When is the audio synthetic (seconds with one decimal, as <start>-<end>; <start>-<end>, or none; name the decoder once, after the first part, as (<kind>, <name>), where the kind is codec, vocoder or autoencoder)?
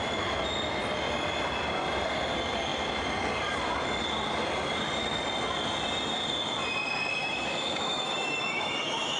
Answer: 7.2-9.2 (autoencoder, DAC-VAE)